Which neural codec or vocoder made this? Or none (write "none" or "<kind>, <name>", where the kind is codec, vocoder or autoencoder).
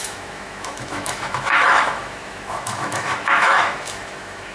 autoencoder, DAC-VAE